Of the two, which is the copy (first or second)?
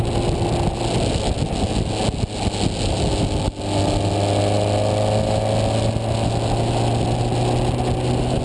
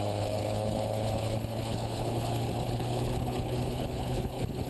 second